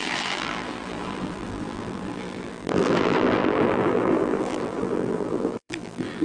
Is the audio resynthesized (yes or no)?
yes